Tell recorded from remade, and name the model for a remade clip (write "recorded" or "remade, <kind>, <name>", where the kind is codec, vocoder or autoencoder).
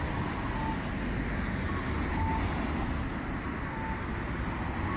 recorded